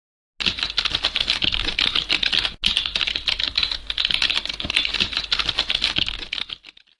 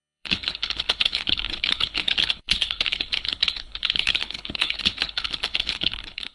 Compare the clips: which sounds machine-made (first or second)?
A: second